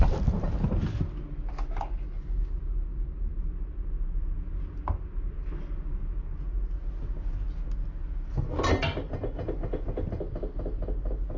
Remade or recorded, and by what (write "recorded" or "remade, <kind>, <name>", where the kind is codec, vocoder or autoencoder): recorded